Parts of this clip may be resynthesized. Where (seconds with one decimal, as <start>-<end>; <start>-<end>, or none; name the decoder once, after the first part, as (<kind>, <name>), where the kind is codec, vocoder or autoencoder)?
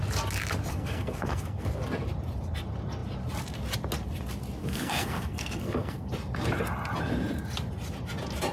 0.7-1.8 (codec, SNAC); 4.6-6.1